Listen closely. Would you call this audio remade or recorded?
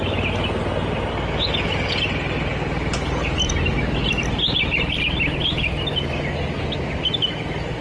recorded